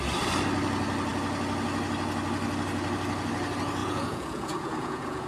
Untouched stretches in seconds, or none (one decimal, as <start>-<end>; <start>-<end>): 0.0-3.8